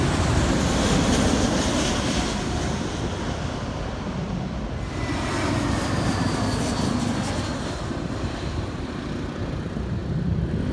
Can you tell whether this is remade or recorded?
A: recorded